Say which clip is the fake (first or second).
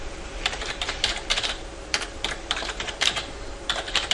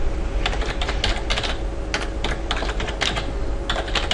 first